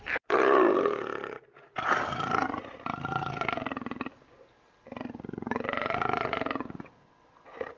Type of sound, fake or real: real